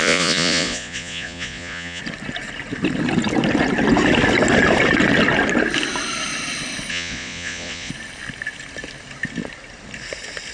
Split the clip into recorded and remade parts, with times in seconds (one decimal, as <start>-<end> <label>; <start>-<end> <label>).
0.0-2.0 remade; 2.0-6.9 recorded; 6.9-7.9 remade; 7.9-10.5 recorded